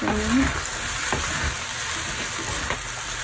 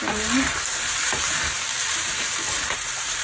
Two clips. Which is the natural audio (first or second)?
first